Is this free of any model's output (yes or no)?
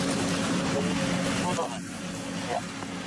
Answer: yes